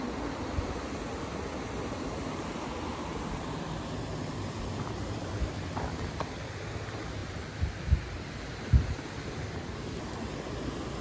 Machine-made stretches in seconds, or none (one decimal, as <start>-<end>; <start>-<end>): none